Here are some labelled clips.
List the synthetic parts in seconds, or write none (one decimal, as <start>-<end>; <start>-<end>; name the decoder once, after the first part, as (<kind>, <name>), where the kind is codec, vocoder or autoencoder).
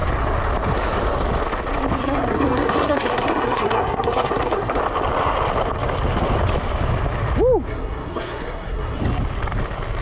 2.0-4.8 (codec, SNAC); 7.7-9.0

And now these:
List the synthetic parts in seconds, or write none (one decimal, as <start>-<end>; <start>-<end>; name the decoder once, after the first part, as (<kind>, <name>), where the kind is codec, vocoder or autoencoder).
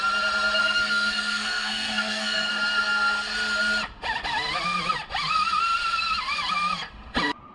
0.6-2.5 (codec, SNAC)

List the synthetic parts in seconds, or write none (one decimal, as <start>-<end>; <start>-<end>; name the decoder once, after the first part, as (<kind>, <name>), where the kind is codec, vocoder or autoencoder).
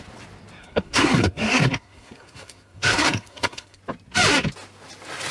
0.6-3.8 (codec, SNAC)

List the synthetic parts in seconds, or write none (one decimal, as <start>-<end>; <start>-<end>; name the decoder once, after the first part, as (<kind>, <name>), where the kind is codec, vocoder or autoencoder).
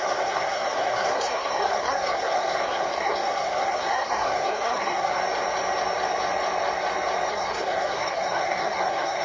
0.0-5.2 (codec, SNAC); 7.3-9.2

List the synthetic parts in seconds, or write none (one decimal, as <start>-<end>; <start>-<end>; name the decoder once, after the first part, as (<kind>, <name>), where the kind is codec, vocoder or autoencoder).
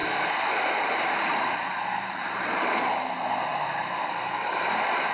0.0-3.1 (vocoder, BigVGAN v2); 3.5-5.1